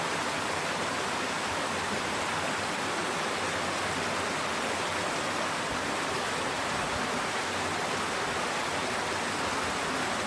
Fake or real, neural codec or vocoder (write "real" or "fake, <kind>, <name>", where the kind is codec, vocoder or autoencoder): real